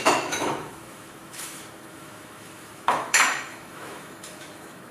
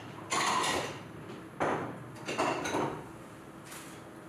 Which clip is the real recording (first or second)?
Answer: second